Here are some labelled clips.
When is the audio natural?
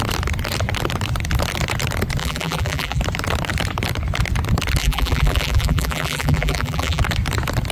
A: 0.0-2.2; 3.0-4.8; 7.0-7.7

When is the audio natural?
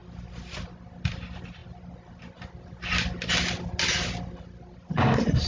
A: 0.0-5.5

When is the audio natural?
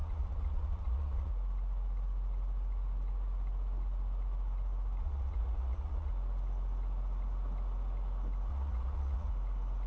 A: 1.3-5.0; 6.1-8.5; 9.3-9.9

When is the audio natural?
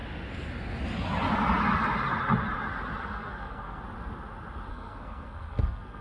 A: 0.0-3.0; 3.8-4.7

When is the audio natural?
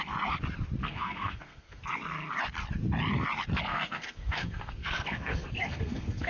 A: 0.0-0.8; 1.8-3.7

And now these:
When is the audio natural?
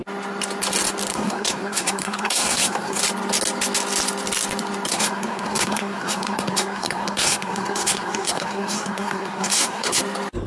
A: 0.0-1.1; 3.0-4.9; 10.0-10.5